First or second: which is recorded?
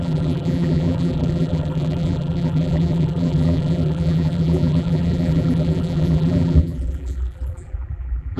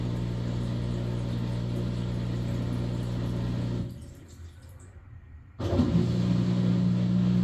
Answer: second